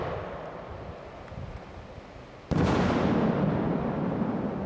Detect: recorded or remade recorded